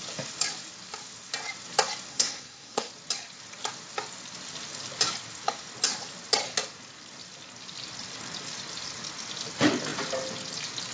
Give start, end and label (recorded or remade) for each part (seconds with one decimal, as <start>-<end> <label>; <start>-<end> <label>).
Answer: 0.0-2.1 recorded; 2.1-2.9 remade; 2.9-10.9 recorded